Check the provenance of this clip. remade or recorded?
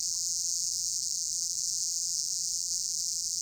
remade